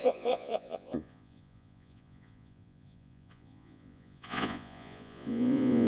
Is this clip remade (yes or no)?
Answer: yes